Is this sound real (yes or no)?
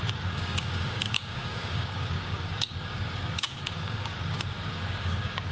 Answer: no